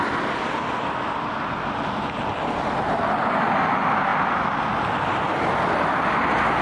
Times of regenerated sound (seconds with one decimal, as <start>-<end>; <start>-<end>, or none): none